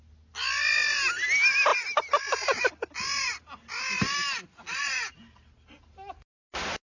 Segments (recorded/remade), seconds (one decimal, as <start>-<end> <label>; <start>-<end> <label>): 0.0-6.8 recorded